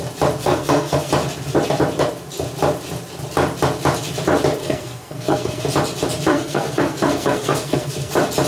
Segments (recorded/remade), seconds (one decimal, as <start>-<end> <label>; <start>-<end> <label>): 0.0-0.4 recorded; 0.4-1.1 remade; 1.1-4.6 recorded; 4.6-5.6 remade; 5.6-6.3 recorded; 6.3-8.1 remade; 8.1-8.5 recorded